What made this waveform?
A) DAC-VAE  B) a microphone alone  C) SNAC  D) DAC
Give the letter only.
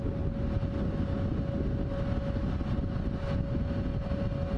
B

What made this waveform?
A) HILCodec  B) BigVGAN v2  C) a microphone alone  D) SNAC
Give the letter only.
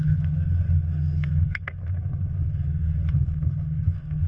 D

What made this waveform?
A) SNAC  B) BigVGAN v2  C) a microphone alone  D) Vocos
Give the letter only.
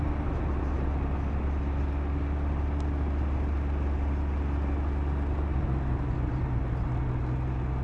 C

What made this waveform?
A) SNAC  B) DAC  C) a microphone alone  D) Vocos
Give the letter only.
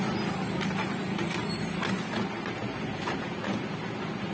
C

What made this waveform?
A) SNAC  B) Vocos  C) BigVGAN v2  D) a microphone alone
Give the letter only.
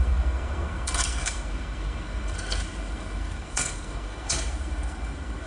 A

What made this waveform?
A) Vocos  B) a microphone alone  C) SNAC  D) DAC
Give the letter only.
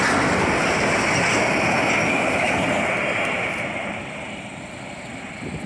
B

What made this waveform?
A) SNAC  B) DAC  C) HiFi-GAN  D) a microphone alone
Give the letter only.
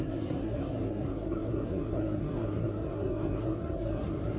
A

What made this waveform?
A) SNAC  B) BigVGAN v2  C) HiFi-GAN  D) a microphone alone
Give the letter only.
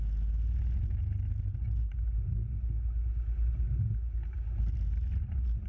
D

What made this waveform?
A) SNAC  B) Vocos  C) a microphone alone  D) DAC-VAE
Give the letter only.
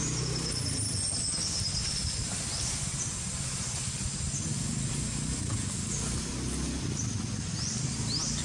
C